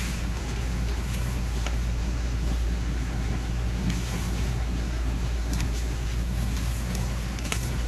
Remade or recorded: remade